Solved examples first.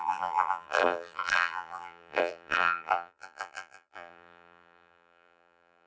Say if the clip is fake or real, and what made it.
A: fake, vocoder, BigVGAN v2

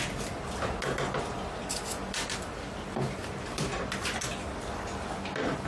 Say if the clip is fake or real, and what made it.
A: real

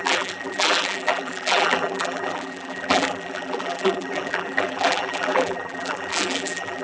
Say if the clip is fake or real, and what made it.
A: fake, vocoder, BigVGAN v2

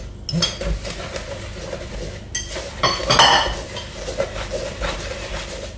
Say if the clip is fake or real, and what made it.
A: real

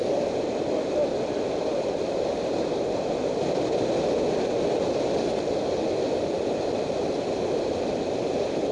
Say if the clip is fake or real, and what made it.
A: fake, vocoder, BigVGAN v2